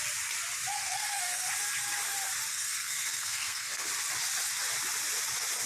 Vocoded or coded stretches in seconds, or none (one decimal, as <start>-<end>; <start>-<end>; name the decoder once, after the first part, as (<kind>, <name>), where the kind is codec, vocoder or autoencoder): 0.7-1.5 (codec, SNAC); 2.5-3.9